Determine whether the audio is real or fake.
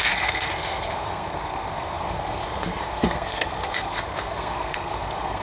fake